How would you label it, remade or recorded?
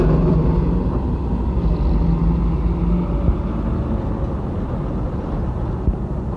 recorded